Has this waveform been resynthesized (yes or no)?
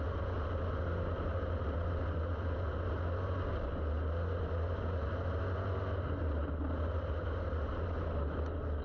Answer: no